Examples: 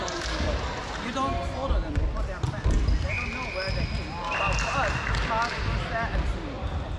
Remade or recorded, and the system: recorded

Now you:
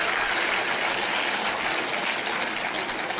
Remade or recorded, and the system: recorded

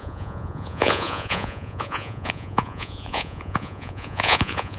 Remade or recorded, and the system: remade, vocoder, Vocos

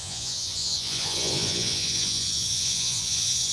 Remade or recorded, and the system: remade, vocoder, Vocos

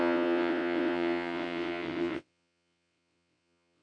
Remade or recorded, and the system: remade, vocoder, WaveNeXt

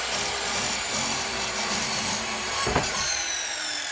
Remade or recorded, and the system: remade, vocoder, BigVGAN v2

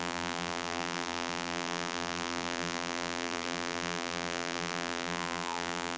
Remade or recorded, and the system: remade, vocoder, BigVGAN v2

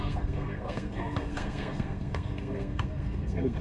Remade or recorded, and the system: remade, codec, SNAC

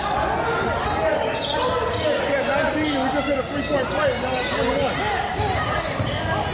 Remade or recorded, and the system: recorded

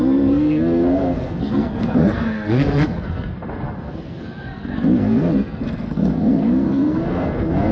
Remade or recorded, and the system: remade, codec, SNAC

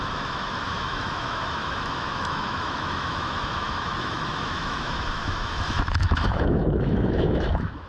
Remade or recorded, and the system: remade, autoencoder, DAC-VAE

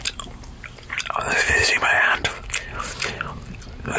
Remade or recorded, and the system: recorded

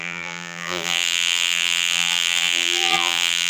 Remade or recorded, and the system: remade, vocoder, BigVGAN v2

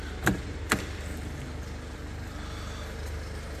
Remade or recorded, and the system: recorded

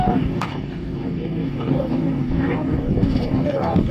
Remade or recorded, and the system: remade, codec, DAC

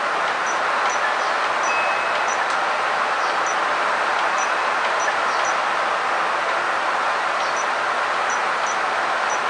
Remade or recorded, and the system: recorded